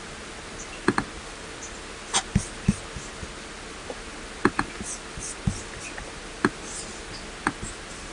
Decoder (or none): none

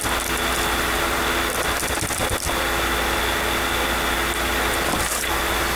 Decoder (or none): none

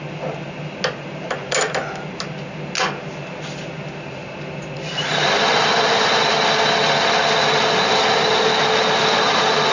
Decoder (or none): none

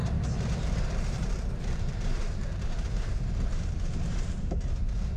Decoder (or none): vocoder, BigVGAN v2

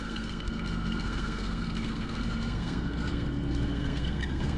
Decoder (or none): codec, SNAC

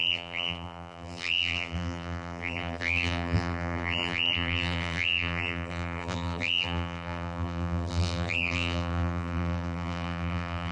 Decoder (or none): vocoder, BigVGAN v2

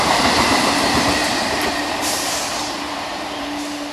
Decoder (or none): vocoder, BigVGAN v2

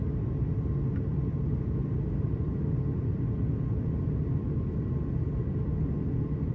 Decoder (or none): none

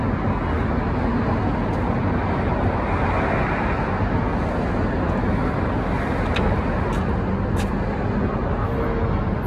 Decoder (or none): none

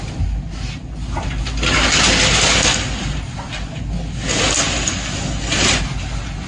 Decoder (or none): none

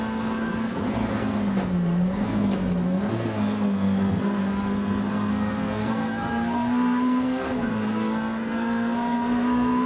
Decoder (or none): codec, SNAC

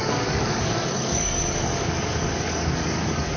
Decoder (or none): codec, DAC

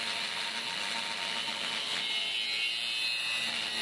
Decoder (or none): none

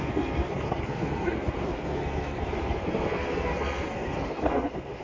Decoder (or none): codec, SNAC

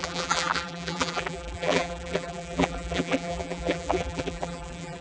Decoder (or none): vocoder, BigVGAN v2